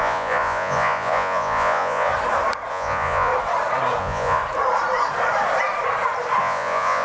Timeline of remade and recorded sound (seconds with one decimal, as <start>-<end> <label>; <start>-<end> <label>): 0.0-2.1 remade; 2.1-2.7 recorded; 2.7-3.3 remade; 3.3-4.0 recorded; 4.0-4.4 remade; 4.4-6.4 recorded; 6.4-7.0 remade